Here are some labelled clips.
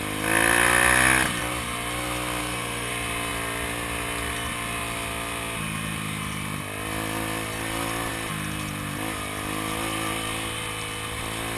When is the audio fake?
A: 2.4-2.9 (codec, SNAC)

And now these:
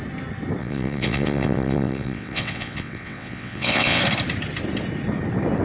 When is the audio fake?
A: 0.6-4.0 (vocoder, WaveNeXt)

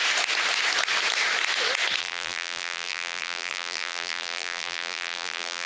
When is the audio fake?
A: 2.0-5.7 (vocoder, BigVGAN v2)

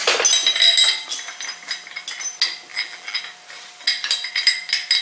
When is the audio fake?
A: 2.7-3.2 (vocoder, BigVGAN v2)

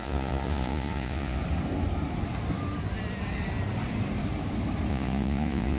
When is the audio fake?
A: 0.0-1.4 (vocoder, Vocos); 4.9-5.8

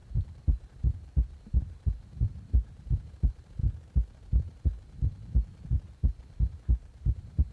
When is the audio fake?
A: 0.0-3.6 (vocoder, BigVGAN v2); 6.5-7.5

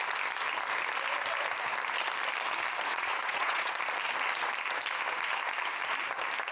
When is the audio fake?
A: 2.9-3.8 (vocoder, Vocos)

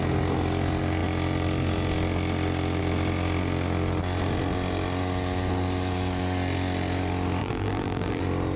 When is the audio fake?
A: 7.4-8.2 (vocoder, BigVGAN v2)